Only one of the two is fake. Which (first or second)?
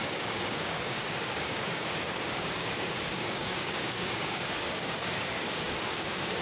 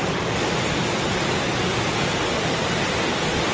first